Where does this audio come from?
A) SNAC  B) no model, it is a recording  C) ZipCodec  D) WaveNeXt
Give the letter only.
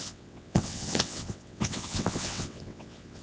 D